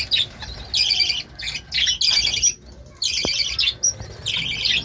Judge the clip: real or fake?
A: real